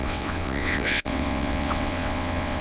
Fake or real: fake